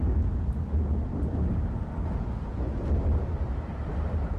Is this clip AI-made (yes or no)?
no